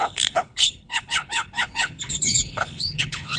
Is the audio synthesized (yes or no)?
yes